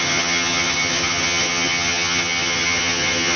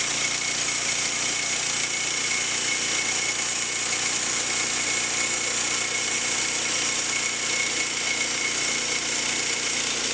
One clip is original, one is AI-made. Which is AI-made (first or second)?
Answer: first